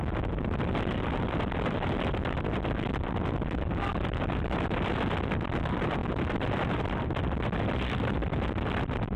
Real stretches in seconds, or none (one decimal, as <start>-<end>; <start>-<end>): none